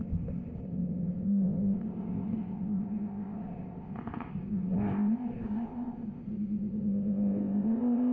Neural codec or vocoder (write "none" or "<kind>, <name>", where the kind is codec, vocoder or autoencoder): codec, ZipCodec